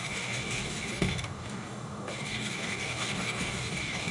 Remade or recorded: remade